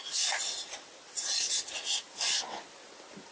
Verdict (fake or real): real